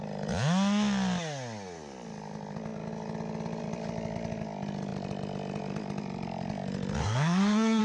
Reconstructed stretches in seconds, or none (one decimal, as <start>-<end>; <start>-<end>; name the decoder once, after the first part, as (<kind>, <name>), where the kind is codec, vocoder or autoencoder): 7.0-7.8 (codec, SNAC)